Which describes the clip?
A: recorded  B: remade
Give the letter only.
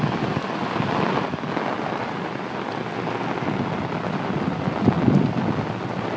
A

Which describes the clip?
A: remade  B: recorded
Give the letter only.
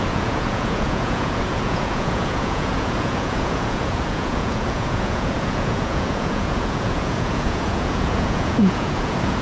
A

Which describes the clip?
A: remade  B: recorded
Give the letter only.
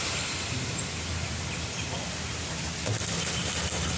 B